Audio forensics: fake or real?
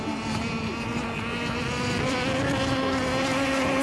real